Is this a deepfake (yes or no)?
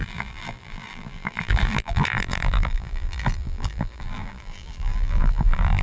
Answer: yes